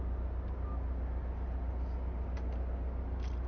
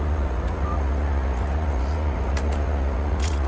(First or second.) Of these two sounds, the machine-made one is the second